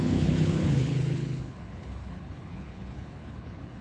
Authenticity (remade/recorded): remade